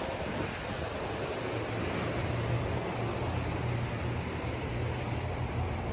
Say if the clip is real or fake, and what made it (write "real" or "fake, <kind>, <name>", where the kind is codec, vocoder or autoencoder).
real